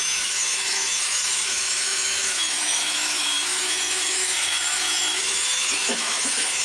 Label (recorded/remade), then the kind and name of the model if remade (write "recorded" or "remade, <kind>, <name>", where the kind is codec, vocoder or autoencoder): remade, autoencoder, DAC-VAE